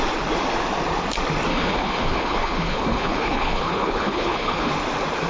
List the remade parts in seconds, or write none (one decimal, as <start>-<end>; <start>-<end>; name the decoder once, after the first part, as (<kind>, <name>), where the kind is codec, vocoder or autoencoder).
1.5-4.7 (codec, HILCodec)